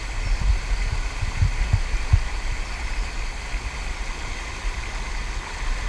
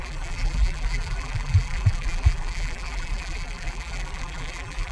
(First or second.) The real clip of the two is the first